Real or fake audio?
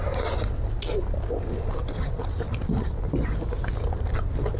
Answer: real